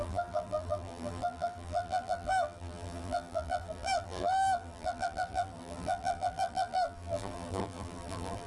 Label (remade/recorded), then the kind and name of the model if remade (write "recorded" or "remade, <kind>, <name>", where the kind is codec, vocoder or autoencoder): remade, vocoder, BigVGAN v2